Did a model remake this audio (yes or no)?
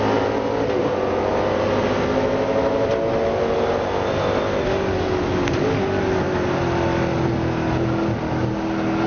no